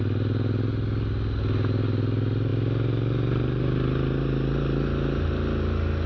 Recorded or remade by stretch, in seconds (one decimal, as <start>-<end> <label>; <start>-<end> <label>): 0.0-6.1 recorded